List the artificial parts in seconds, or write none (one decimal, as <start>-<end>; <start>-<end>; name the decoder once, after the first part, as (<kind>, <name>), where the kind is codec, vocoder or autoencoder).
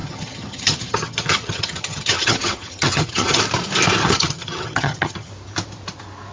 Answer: 0.0-3.4 (vocoder, HiFi-GAN); 4.0-5.3